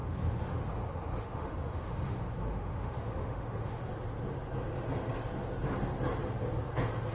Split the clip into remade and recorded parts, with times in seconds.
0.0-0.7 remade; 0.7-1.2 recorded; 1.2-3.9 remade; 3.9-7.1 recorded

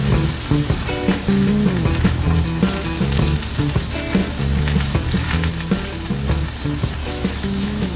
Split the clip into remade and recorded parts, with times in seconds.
0.0-7.0 recorded; 7.0-8.0 remade

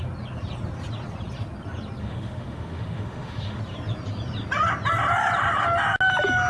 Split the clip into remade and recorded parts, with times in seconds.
0.0-2.0 recorded; 2.0-3.6 remade; 3.6-6.5 recorded

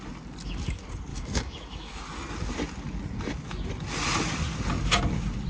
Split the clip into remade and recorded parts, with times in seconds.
0.0-1.1 recorded; 1.1-2.0 remade; 2.0-5.5 recorded

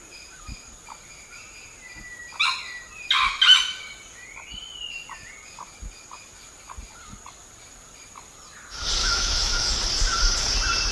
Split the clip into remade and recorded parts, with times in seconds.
0.0-9.0 recorded; 9.0-9.7 remade; 9.7-10.9 recorded

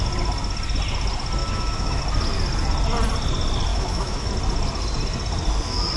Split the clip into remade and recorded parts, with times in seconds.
0.0-1.4 recorded; 1.4-2.0 remade; 2.0-3.7 recorded; 3.7-4.3 remade; 4.3-6.0 recorded